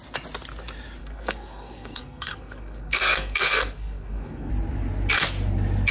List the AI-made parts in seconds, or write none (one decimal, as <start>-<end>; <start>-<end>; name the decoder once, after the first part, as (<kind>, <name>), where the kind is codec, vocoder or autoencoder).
1.0-4.5 (codec, SNAC)